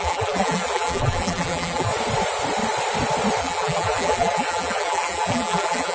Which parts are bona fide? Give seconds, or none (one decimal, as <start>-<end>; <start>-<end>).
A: 1.9-3.4